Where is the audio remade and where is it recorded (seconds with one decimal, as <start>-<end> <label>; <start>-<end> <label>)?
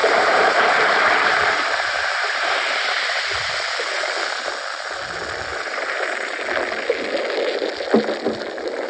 0.0-3.5 remade; 3.5-5.5 recorded; 5.5-6.4 remade; 6.4-8.9 recorded